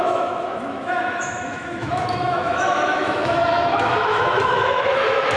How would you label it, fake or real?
fake